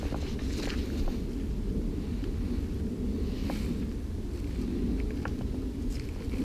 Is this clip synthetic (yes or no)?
no